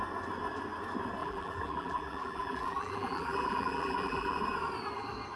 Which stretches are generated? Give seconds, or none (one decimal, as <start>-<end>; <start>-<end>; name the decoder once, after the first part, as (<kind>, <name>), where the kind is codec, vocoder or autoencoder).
1.2-4.4 (vocoder, BigVGAN v2)